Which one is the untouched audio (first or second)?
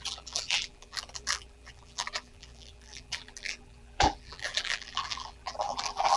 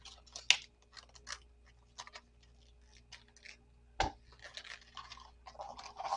second